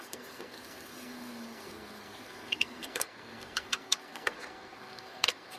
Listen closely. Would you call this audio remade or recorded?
remade